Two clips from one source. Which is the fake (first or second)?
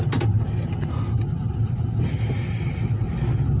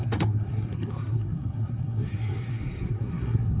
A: second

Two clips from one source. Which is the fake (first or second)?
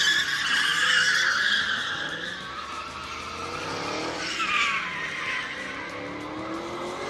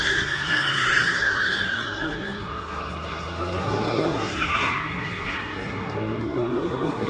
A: second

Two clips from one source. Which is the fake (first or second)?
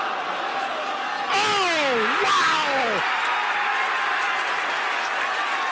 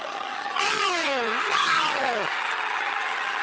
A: second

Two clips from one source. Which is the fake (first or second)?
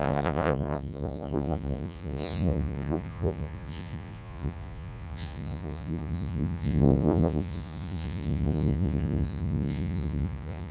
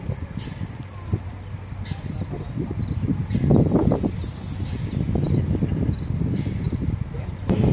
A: first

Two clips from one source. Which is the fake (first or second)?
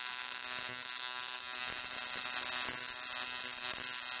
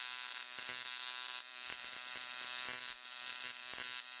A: second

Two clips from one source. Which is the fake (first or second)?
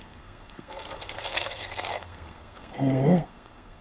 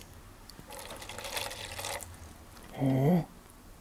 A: first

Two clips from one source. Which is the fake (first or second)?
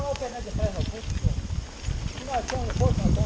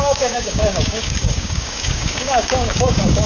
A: second